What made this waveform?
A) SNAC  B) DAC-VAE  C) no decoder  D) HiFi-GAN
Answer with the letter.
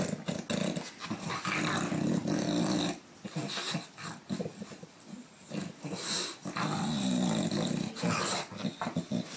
C